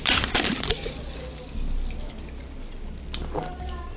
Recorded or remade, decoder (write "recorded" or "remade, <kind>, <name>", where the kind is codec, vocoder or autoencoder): recorded